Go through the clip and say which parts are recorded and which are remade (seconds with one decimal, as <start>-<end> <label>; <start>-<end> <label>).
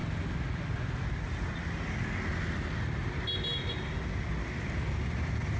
0.0-5.6 recorded